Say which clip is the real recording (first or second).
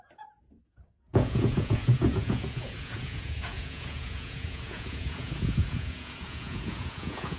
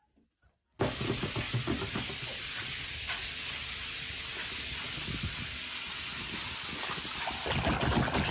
second